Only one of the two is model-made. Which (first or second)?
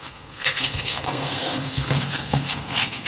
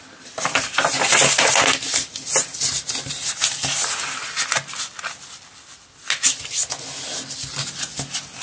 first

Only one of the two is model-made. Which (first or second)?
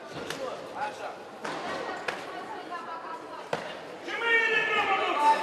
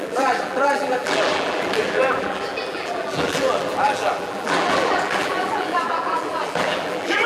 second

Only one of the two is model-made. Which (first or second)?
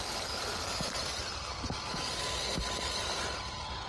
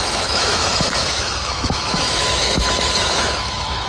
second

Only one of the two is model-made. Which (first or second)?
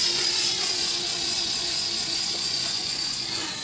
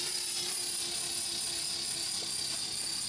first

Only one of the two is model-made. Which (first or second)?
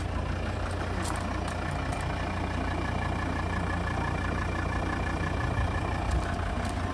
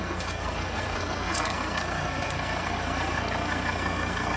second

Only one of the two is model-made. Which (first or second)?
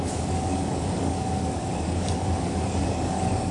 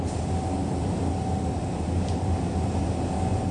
first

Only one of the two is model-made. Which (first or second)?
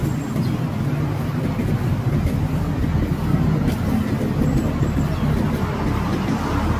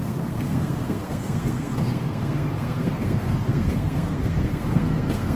second